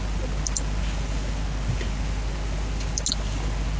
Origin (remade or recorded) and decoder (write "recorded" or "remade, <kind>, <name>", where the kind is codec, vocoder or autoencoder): recorded